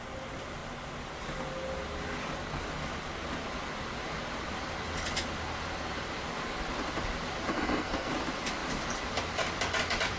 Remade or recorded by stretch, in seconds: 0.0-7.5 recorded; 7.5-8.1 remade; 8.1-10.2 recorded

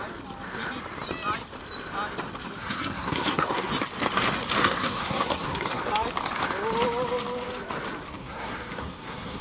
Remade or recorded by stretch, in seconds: 0.0-2.6 recorded; 2.6-3.7 remade; 3.7-4.6 recorded; 4.6-5.8 remade; 5.8-8.2 recorded; 8.2-9.4 remade